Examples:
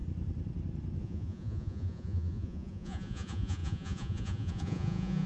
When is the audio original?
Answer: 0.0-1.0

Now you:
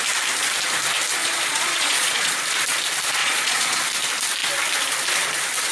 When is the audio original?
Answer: 0.0-1.2; 2.3-3.2; 3.8-5.7

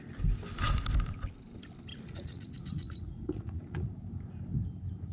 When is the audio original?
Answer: 0.0-1.9; 3.9-5.1

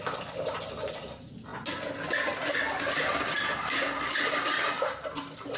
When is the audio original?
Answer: 0.0-5.6

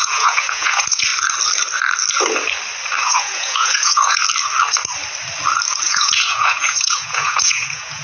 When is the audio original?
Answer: 1.1-3.0; 4.2-5.8

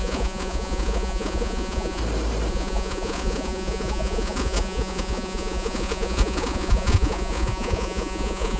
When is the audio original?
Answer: 2.0-2.5

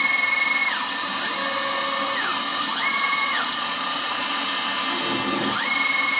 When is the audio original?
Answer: 0.0-2.5; 4.3-6.2